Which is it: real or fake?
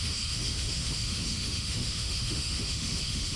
fake